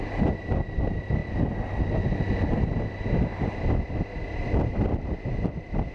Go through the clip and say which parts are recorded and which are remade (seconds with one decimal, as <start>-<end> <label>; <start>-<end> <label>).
0.0-5.9 recorded